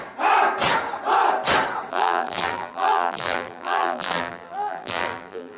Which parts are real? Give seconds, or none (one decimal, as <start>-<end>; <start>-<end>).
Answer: 0.0-1.9